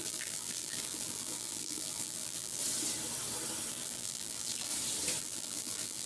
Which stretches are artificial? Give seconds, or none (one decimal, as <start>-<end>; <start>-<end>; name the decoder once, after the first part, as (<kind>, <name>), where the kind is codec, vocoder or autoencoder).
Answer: 0.0-2.6 (vocoder, BigVGAN v2); 3.7-4.7; 5.2-6.1